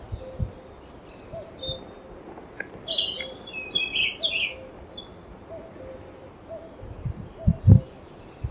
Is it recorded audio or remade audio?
recorded